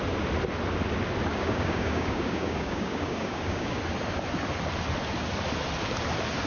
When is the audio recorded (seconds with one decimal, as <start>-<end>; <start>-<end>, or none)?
0.0-1.3; 3.8-6.5